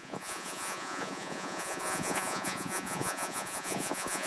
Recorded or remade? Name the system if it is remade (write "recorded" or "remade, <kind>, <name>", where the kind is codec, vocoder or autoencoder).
remade, vocoder, Vocos